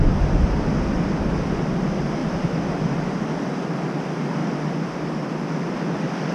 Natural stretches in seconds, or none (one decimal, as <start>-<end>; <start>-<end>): 0.0-2.2; 2.8-6.3